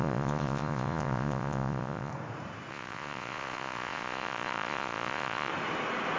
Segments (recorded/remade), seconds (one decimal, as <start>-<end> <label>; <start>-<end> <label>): 0.0-2.1 remade; 2.1-2.7 recorded; 2.7-5.5 remade; 5.5-6.2 recorded